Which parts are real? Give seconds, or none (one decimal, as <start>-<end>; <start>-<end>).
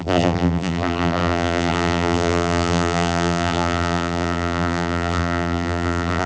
none